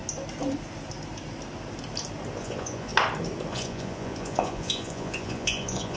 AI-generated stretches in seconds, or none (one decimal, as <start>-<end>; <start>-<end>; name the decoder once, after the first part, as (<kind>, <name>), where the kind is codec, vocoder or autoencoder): 2.4-2.9 (vocoder, Vocos); 3.5-6.0